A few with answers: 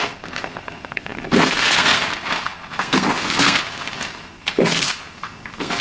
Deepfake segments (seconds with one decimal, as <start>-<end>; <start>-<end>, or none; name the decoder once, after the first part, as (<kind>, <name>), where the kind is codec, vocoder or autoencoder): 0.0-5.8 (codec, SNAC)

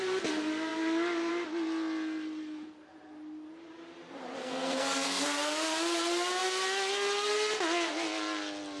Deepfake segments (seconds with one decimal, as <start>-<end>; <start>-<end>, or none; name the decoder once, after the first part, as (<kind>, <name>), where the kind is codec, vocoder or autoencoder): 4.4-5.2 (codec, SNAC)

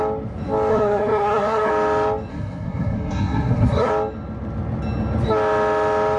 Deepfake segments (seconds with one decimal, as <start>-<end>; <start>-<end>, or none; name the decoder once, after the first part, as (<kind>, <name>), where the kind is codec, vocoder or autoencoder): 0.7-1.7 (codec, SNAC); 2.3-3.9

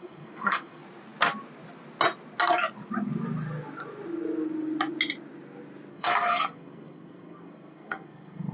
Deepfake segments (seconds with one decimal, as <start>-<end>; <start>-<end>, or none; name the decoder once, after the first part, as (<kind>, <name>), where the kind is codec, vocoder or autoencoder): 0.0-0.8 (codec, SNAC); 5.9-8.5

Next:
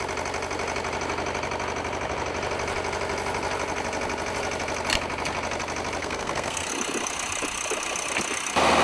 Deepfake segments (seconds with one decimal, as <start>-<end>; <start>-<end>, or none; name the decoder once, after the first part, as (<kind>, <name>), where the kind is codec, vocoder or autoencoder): 6.0-6.7 (codec, SNAC)

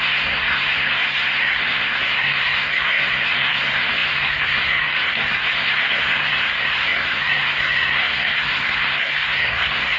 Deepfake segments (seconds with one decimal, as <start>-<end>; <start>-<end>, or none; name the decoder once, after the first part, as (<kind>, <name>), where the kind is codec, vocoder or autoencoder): 0.0-10.0 (codec, SNAC)

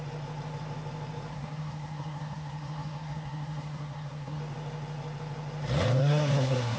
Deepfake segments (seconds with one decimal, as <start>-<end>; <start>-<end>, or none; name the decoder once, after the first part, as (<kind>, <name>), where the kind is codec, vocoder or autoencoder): 1.3-4.4 (codec, SNAC); 6.0-6.8

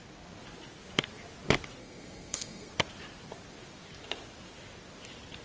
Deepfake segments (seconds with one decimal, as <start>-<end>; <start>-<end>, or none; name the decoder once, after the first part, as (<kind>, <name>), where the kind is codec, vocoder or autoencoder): 1.8-2.7 (codec, SNAC)